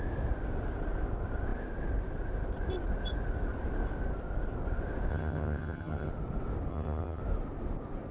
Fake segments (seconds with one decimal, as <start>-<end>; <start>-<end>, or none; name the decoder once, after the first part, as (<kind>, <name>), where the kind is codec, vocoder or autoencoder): 5.1-6.1 (vocoder, HiFi-GAN); 6.7-7.2